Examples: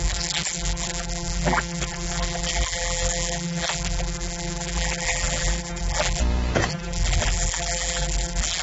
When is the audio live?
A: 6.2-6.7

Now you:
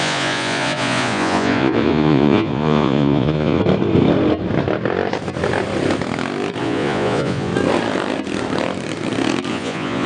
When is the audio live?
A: 3.6-6.6; 7.5-9.5